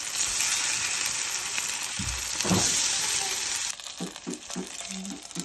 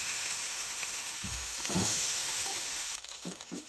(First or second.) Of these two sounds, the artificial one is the second